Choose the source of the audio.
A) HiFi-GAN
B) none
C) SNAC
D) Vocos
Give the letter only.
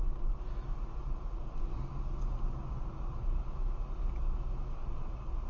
B